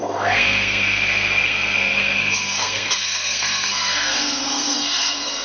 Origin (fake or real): fake